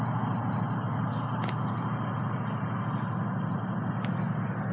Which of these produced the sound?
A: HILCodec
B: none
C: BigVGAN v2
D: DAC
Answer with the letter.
B